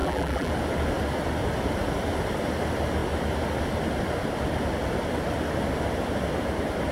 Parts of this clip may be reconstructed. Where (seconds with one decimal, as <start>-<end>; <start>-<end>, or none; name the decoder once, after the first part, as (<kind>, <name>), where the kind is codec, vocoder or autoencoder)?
0.0-0.5 (vocoder, BigVGAN v2)